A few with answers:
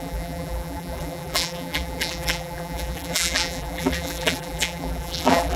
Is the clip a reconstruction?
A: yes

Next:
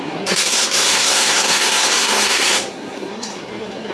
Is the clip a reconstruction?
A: yes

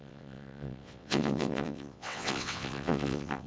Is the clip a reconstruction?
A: yes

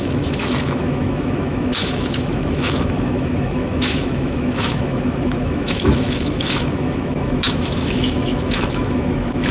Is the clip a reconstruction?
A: yes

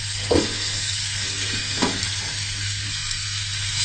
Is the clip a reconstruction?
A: yes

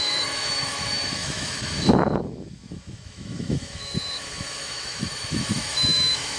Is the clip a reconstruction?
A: yes